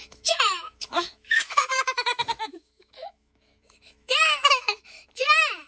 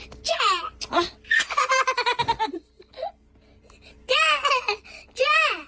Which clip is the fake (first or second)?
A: first